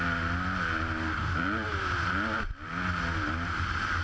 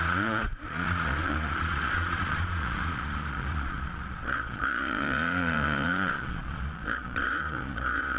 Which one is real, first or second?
first